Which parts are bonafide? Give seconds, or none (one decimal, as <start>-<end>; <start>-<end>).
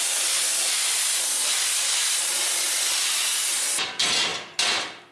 0.0-5.1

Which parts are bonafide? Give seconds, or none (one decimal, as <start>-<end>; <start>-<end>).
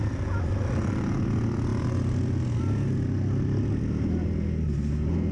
0.0-5.3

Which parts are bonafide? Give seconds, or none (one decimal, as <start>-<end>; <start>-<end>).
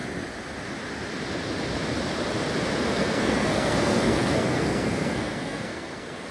0.0-2.9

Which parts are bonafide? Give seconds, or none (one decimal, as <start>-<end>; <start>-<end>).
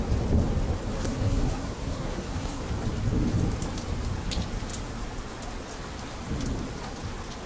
0.0-0.9; 2.6-7.5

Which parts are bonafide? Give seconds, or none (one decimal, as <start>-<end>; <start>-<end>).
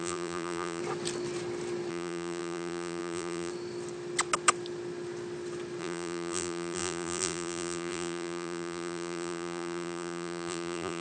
0.8-1.9; 3.5-5.8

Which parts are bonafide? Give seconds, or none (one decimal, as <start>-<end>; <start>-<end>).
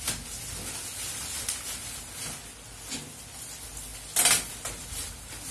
0.0-5.5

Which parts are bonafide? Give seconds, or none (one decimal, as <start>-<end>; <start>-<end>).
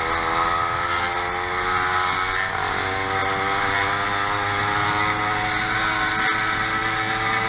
0.0-7.5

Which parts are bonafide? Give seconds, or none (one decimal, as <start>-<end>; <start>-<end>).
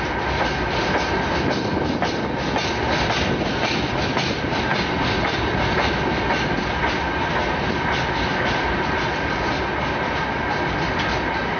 0.0-11.6